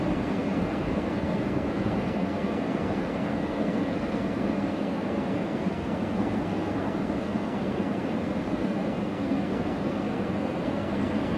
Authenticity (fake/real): fake